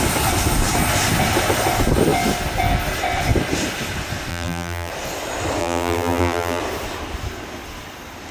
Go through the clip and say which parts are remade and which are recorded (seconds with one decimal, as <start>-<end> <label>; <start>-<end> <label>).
0.0-4.3 recorded; 4.3-4.9 remade; 4.9-5.6 recorded; 5.6-6.6 remade; 6.6-8.3 recorded